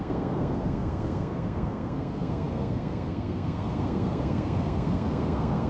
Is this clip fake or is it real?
fake